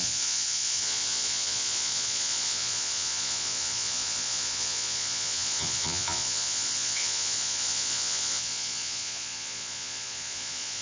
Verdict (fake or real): fake